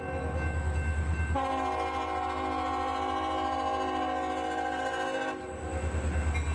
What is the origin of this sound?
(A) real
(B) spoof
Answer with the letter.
A